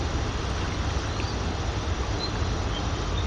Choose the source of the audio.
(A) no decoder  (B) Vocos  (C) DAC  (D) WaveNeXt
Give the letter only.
A